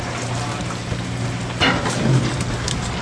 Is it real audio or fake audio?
real